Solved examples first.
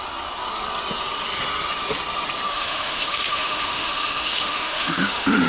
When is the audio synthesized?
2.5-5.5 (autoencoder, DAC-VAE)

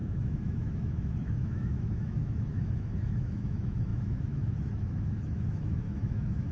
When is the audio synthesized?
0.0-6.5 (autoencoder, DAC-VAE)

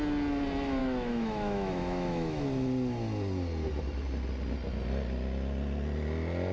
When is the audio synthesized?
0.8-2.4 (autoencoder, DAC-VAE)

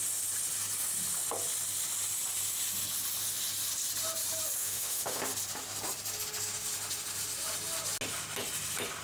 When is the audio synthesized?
4.6-5.2 (autoencoder, DAC-VAE)

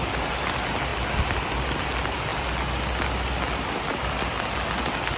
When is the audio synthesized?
none

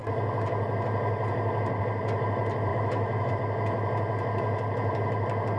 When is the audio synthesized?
2.7-3.3 (autoencoder, DAC-VAE)